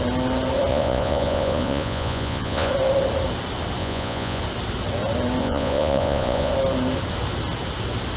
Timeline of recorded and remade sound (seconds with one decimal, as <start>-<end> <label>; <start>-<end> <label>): 0.0-0.7 recorded; 0.7-2.7 remade; 2.7-3.8 recorded; 3.8-4.4 remade; 4.4-5.4 recorded; 5.4-6.5 remade; 6.5-8.2 recorded